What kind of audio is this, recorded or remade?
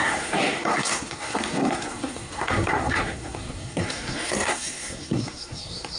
remade